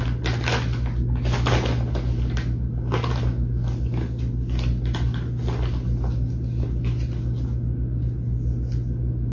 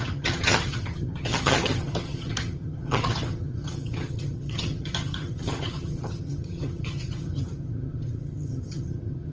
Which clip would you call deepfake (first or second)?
second